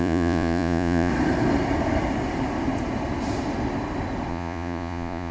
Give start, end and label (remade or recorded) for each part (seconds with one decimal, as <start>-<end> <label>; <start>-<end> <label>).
0.0-1.1 remade; 1.1-4.3 recorded; 4.3-5.3 remade